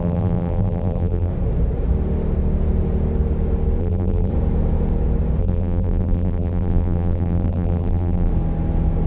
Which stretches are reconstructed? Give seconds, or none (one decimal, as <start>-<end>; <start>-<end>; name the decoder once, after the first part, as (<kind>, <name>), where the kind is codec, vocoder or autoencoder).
0.0-1.3 (vocoder, BigVGAN v2); 3.8-4.3; 5.4-8.3